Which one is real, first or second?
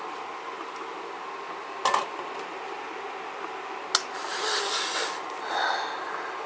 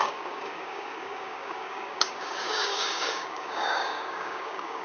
first